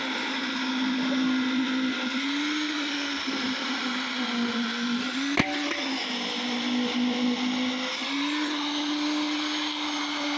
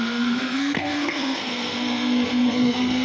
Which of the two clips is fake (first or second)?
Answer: second